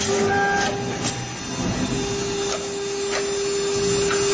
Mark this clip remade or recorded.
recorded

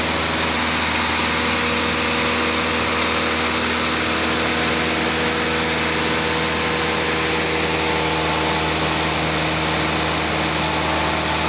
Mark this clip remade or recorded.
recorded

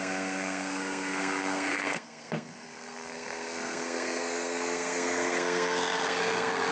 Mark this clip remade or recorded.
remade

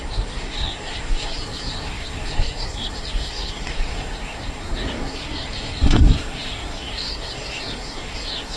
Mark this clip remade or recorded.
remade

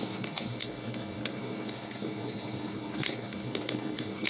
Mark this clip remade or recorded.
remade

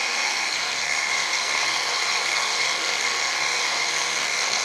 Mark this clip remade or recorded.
remade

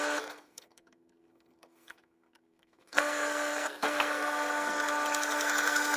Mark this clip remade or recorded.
remade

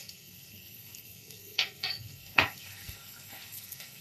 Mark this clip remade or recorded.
remade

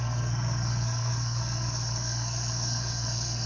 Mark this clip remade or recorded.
remade